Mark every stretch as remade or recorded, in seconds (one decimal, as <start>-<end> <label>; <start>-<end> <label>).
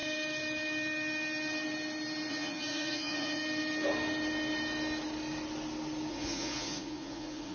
0.0-2.3 recorded; 2.3-3.4 remade; 3.4-6.1 recorded; 6.1-7.5 remade